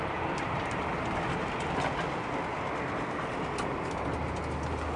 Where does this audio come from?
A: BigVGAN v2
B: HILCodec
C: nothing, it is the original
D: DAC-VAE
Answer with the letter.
C